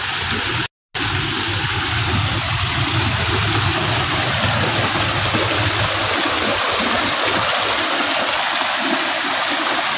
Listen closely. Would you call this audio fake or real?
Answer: real